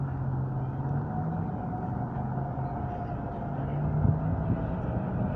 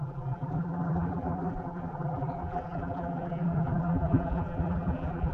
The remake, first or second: second